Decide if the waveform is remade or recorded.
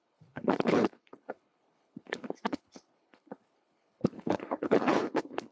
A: remade